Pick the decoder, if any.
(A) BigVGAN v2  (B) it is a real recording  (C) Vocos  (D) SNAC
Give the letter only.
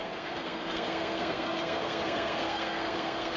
D